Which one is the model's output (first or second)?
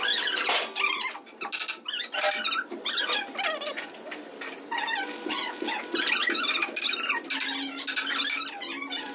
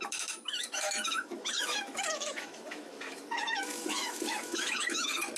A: second